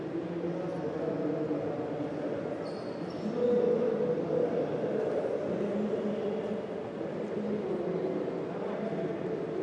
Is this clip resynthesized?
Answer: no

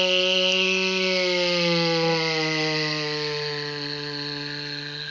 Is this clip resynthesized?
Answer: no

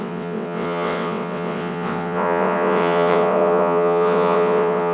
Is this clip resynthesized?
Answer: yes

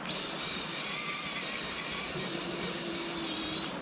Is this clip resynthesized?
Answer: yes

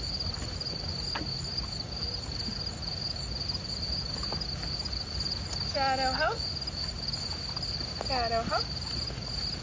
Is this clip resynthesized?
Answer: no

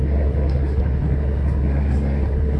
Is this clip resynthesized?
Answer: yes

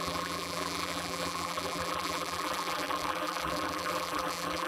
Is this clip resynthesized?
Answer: yes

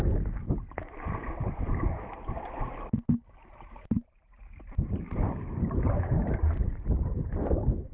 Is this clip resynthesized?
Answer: no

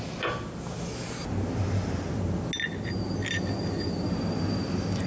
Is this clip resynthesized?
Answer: no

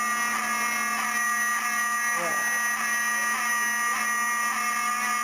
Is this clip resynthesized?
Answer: no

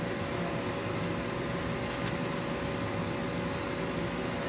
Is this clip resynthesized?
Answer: no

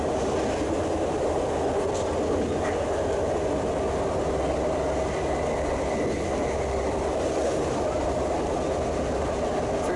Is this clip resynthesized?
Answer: no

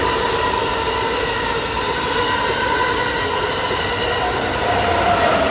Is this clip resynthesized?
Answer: no